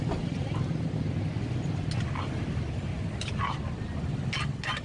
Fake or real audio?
real